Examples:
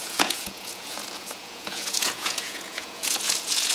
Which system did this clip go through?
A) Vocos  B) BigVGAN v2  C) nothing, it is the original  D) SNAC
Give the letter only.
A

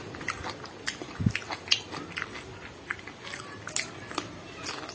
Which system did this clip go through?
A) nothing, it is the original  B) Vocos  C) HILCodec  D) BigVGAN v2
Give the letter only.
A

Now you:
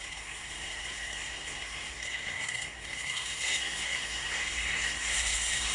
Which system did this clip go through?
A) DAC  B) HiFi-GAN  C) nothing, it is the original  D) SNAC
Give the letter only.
D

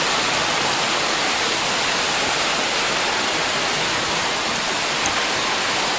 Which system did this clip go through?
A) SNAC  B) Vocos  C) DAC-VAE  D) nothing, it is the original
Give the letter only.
D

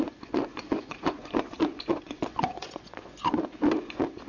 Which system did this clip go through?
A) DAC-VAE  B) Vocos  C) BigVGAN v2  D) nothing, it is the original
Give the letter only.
B